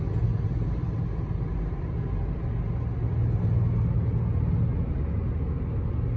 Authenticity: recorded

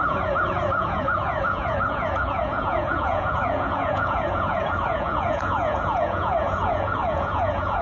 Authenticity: remade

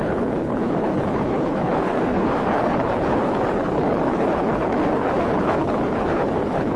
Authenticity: remade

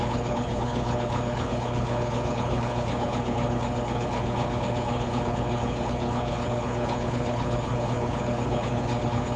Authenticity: remade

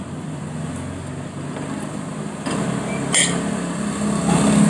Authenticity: recorded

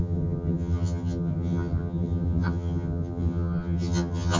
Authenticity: remade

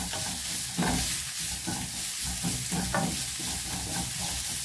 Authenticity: recorded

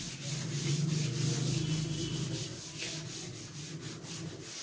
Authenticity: recorded